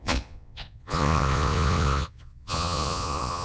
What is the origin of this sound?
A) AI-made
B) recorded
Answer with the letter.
A